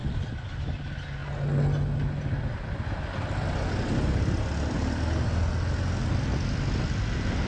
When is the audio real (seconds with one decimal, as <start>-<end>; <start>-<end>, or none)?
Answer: 0.0-7.5